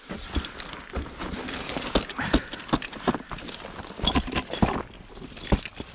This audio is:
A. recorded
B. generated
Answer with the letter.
A